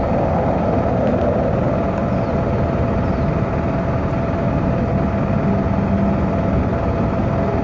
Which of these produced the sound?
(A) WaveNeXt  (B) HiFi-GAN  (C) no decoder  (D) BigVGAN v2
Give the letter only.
C